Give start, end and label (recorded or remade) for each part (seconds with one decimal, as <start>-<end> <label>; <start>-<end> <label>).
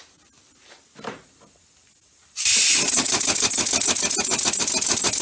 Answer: 0.0-5.2 recorded